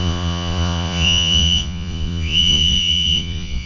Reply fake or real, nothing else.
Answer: fake